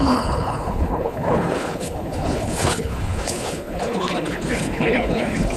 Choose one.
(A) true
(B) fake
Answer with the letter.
B